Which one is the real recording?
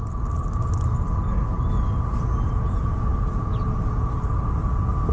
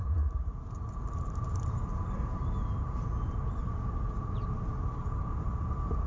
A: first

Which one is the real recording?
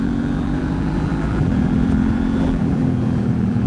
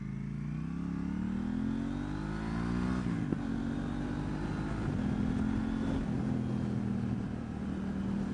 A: second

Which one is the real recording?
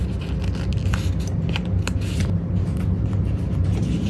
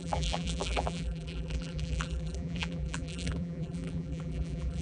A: first